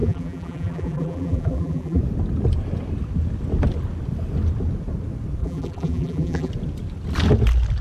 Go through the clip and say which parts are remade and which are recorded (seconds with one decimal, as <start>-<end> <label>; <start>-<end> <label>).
0.0-2.0 remade; 2.0-5.4 recorded; 5.4-6.5 remade; 6.5-7.8 recorded